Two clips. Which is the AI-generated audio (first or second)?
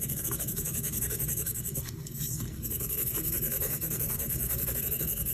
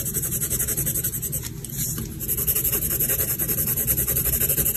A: first